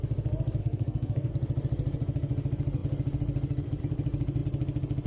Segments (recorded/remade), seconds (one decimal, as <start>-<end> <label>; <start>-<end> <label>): 0.0-0.6 recorded; 0.6-1.3 remade; 1.3-5.1 recorded